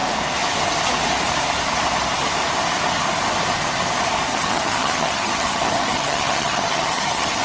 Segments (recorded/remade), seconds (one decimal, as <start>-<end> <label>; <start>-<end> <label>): 0.0-4.3 recorded; 4.3-7.4 remade